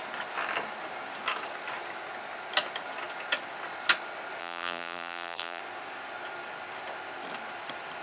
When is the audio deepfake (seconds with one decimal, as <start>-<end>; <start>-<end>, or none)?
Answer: 4.4-5.6